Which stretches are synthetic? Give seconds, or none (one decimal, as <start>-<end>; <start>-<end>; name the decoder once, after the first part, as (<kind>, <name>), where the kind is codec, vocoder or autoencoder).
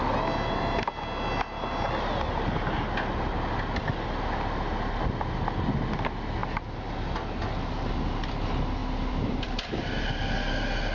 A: 8.8-10.3 (vocoder, BigVGAN v2)